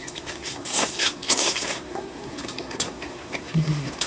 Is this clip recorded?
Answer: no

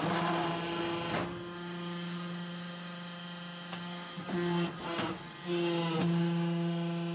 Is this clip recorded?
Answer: yes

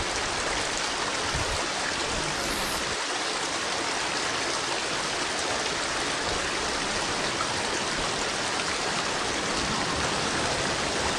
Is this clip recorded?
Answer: yes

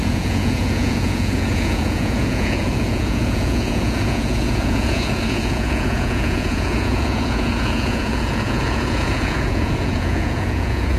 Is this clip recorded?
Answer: no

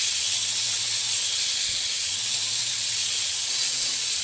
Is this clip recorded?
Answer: no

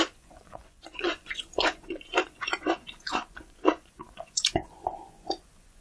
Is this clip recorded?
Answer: no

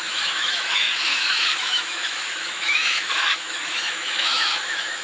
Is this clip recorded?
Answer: no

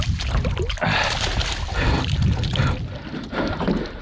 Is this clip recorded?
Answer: yes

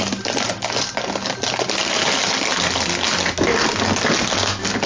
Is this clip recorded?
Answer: yes